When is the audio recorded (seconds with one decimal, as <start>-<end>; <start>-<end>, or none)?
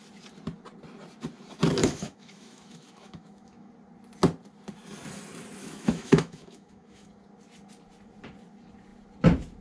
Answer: 0.0-1.8; 3.7-5.6; 7.1-9.6